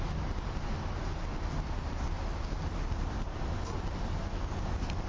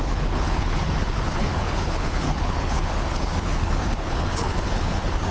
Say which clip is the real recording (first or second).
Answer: first